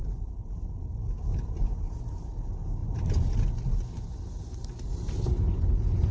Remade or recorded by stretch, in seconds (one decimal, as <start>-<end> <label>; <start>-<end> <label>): 0.0-6.1 recorded